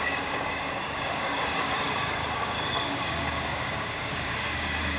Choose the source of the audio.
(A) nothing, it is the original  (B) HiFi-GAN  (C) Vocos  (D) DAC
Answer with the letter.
D